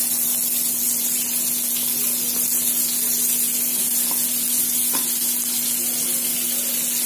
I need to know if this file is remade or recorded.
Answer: recorded